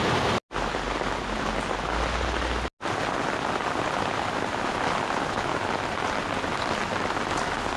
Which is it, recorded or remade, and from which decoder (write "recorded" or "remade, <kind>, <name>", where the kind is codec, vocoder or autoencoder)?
recorded